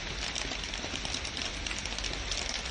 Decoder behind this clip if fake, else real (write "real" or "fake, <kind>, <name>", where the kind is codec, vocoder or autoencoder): real